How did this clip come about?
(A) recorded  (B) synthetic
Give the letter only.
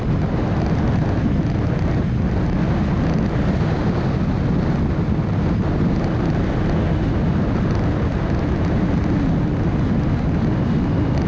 A